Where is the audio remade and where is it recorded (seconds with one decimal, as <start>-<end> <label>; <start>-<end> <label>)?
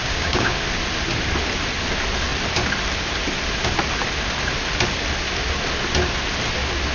0.0-0.6 remade; 0.6-6.9 recorded